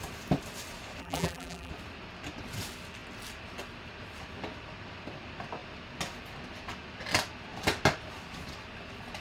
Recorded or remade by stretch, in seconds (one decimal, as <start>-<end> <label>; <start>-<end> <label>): 0.0-1.0 recorded; 1.0-1.7 remade; 1.7-9.2 recorded